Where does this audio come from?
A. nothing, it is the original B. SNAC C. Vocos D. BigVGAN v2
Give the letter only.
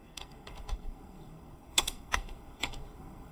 B